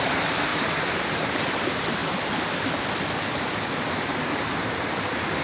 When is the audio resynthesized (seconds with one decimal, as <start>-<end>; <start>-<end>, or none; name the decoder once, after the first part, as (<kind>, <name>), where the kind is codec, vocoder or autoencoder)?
0.0-2.0 (vocoder, BigVGAN v2); 3.9-5.4